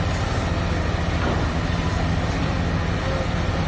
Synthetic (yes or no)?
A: no